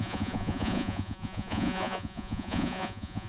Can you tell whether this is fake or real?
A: fake